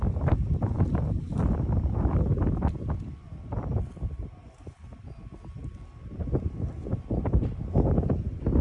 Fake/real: real